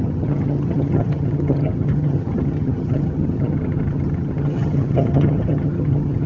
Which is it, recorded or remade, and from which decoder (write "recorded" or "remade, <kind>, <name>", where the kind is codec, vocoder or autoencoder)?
remade, vocoder, HiFi-GAN